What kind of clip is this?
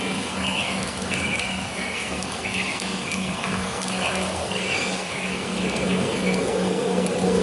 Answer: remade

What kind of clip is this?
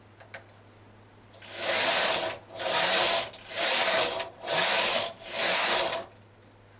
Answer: recorded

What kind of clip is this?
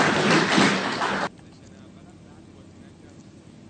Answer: recorded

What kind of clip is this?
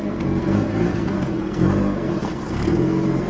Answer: remade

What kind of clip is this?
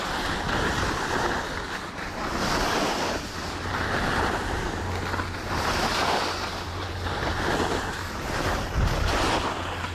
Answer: recorded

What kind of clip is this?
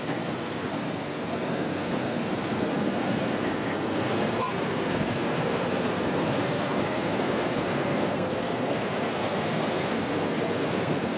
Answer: remade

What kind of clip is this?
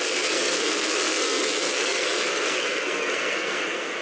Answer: remade